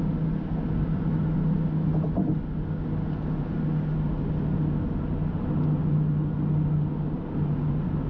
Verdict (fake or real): real